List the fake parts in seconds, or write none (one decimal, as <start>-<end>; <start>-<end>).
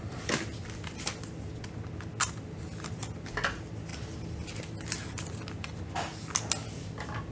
none